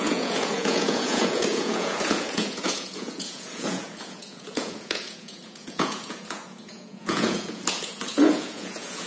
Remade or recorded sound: remade